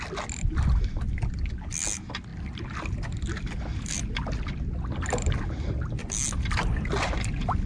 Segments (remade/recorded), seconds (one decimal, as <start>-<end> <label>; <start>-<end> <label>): 0.0-7.7 recorded